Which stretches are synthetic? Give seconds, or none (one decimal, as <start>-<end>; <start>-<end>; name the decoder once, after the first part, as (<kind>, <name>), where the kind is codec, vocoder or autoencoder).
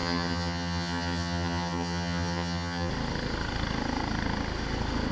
0.0-2.9 (vocoder, HiFi-GAN)